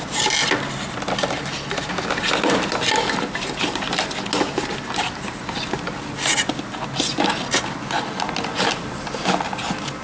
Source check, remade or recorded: recorded